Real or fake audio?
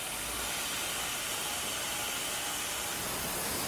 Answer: real